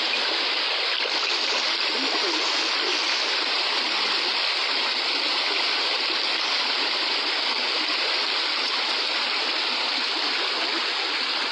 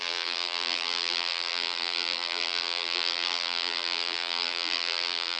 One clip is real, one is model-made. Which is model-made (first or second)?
second